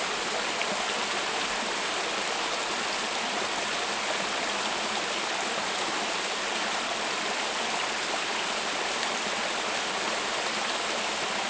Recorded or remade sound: recorded